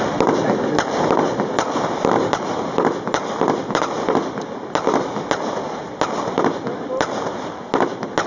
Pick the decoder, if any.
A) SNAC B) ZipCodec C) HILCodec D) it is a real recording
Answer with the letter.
D